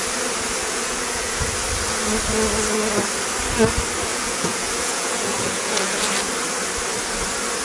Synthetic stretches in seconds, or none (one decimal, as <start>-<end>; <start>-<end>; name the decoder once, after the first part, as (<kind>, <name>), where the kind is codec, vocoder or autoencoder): 0.6-1.5 (vocoder, Vocos); 4.1-6.0